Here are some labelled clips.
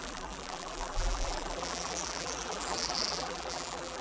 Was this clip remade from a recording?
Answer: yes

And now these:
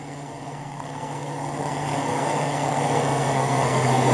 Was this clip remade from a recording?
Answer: yes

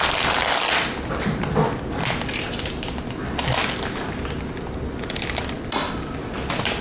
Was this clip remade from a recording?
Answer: no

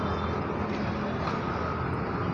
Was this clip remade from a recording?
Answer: no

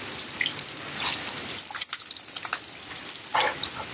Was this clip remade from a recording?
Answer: no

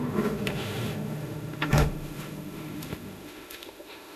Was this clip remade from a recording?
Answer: yes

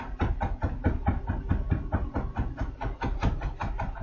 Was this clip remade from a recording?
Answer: no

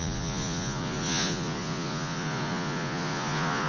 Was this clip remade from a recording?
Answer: yes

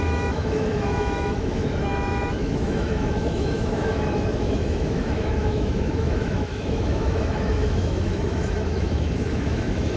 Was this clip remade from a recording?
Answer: yes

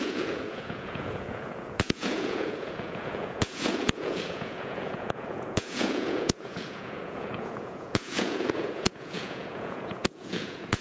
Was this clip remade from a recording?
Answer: yes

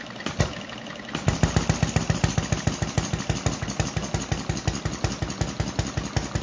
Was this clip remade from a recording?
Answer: no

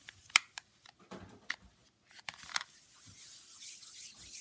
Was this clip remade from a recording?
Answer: no